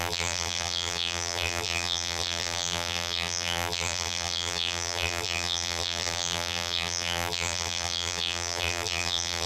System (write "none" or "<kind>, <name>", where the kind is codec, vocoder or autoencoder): vocoder, BigVGAN v2